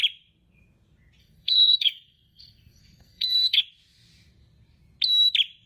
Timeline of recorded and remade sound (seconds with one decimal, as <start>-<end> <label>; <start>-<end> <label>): 0.0-1.2 recorded; 1.2-3.6 remade; 3.6-5.7 recorded

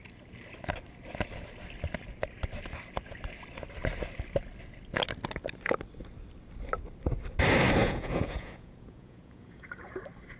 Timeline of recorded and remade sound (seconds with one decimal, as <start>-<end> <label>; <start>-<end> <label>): 0.0-7.8 recorded; 7.8-10.0 remade; 10.0-10.4 recorded

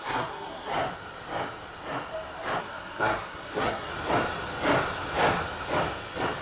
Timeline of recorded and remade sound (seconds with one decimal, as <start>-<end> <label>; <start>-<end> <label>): 0.0-0.7 remade; 0.7-2.6 recorded; 2.6-3.9 remade; 3.9-6.4 recorded

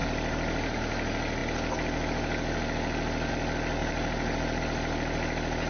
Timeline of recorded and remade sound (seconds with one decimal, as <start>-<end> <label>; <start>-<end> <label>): 0.0-0.8 remade; 0.8-3.8 recorded; 3.8-4.6 remade; 4.6-5.7 recorded

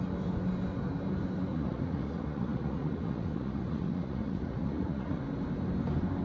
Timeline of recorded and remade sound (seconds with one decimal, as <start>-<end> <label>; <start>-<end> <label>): 0.0-1.5 recorded; 1.5-5.2 remade; 5.2-6.2 recorded

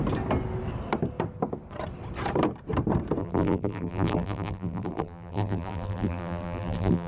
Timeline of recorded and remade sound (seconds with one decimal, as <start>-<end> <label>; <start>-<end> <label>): 0.0-3.2 recorded; 3.2-7.1 remade

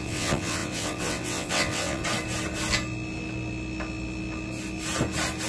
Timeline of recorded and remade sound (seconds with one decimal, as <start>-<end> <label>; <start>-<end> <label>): 0.0-2.0 remade; 2.0-5.5 recorded

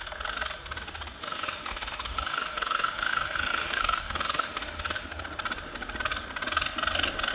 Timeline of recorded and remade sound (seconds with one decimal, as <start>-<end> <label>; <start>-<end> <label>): 0.0-1.2 recorded; 1.2-5.2 remade; 5.2-7.3 recorded